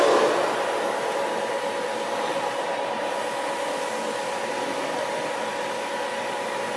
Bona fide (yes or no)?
yes